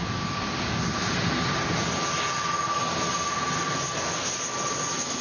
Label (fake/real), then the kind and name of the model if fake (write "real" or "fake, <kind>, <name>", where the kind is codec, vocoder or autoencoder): real